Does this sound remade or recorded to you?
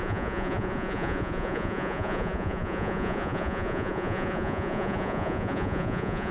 remade